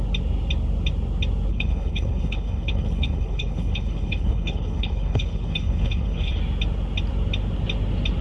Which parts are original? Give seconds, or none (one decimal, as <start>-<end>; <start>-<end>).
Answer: 0.0-1.5; 6.4-8.2